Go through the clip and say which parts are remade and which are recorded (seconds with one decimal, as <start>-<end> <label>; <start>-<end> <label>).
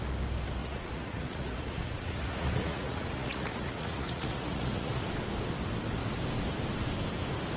0.0-0.6 recorded; 0.6-5.0 remade; 5.0-7.6 recorded